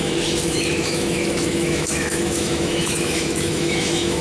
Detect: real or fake fake